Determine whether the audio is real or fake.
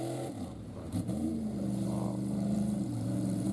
fake